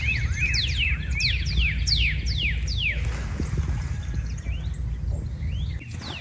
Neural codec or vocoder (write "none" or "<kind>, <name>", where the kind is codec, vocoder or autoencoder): none